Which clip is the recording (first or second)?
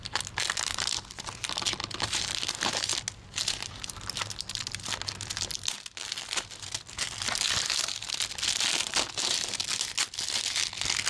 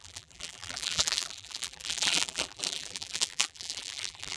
first